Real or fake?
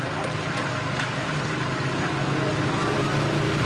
real